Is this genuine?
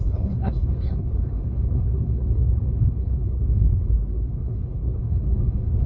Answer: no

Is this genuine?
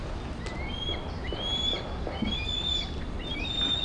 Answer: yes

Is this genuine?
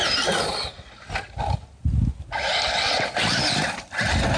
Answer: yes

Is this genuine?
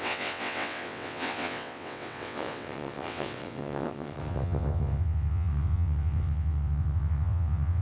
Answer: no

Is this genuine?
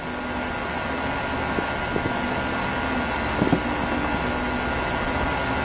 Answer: yes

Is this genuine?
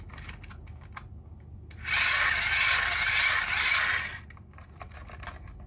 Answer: yes